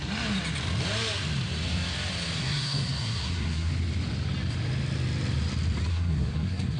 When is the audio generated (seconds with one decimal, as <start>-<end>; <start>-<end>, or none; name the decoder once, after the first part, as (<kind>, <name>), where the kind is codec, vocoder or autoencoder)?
2.4-3.7 (codec, SNAC); 5.9-6.8

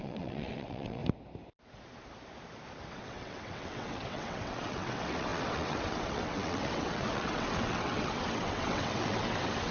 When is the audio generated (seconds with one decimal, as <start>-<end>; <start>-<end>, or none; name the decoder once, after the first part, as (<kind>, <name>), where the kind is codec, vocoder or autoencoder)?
0.0-1.0 (vocoder, WaveNeXt); 2.9-9.7

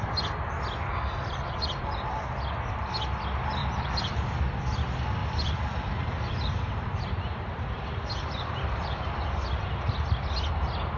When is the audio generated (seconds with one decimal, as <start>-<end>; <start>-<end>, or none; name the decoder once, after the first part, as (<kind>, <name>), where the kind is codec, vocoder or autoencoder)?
3.6-4.4 (vocoder, BigVGAN v2); 5.2-9.1

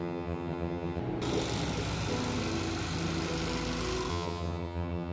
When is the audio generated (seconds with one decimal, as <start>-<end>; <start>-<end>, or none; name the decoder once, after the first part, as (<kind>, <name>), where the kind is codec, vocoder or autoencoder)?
0.0-1.0 (vocoder, HiFi-GAN); 4.1-5.1

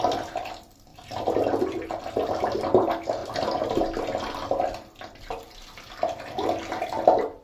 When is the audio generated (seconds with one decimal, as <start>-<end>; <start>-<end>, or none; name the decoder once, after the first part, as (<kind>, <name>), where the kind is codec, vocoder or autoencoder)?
none